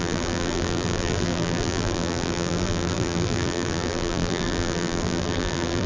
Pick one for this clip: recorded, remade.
remade